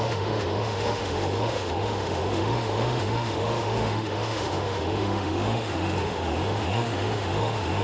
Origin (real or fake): fake